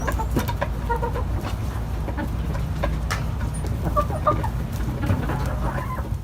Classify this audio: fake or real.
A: real